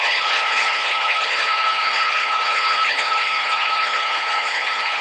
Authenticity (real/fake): fake